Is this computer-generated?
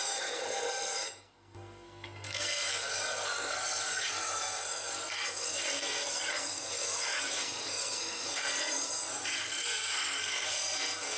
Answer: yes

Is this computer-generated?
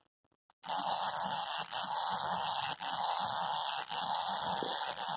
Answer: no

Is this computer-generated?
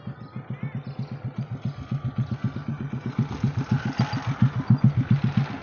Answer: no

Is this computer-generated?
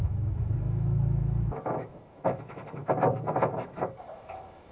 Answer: yes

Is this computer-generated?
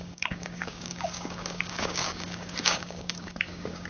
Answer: yes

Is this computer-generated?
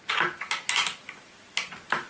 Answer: no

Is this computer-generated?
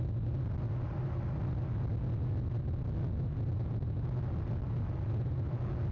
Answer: no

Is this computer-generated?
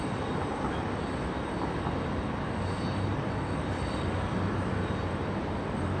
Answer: no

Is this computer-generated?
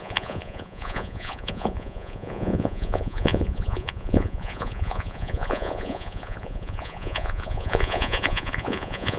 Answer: yes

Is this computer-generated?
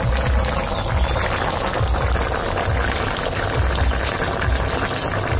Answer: no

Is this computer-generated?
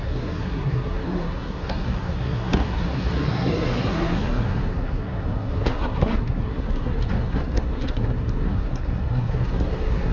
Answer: yes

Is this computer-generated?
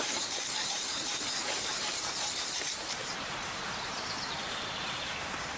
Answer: yes